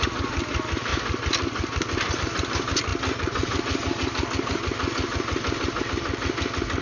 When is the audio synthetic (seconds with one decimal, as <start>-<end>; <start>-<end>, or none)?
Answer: none